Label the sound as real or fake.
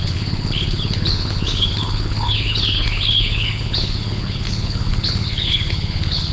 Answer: fake